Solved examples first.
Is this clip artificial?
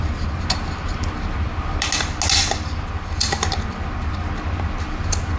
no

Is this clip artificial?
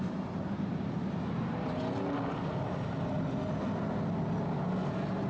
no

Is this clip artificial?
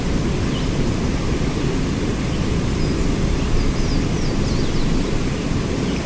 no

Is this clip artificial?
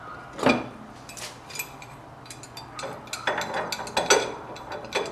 no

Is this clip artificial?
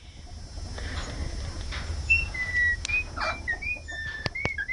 no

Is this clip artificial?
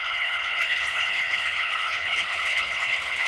yes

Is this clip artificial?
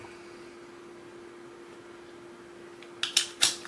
no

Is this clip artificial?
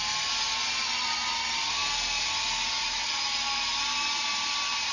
no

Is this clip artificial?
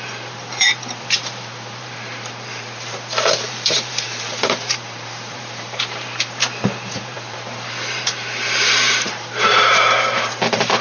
yes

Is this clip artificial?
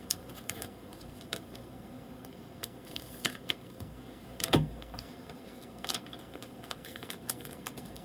yes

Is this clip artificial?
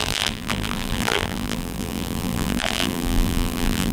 yes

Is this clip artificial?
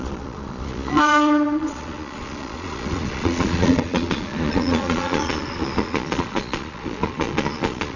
yes